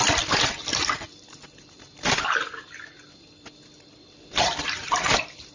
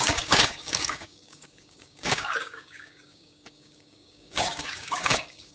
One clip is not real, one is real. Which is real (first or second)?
first